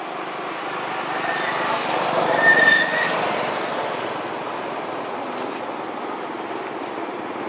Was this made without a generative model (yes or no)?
yes